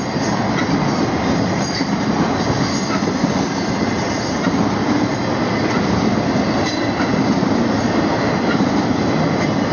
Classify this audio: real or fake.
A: real